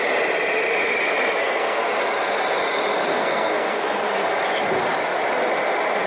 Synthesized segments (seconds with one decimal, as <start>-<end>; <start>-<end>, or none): 1.4-1.9; 3.1-4.0